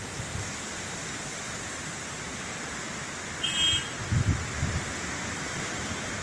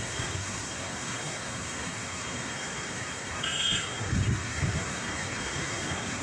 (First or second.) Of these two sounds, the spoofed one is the second